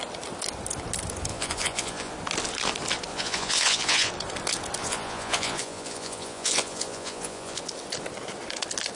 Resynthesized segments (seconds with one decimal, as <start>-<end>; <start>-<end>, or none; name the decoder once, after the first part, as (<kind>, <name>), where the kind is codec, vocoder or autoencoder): 1.3-2.1 (vocoder, Vocos); 3.1-4.1; 4.8-7.6